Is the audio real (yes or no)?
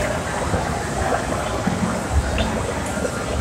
yes